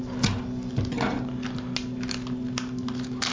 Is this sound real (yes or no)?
yes